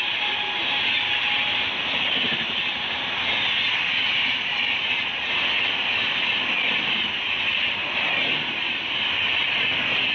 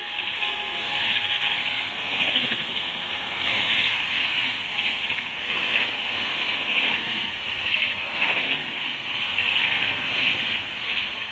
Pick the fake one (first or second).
second